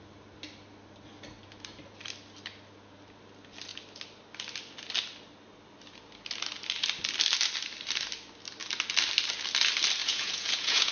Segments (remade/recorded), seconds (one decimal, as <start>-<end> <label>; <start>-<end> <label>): 0.0-10.0 recorded; 10.0-10.9 remade